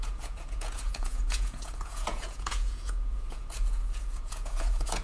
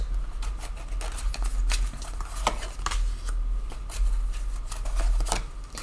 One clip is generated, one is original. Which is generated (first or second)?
first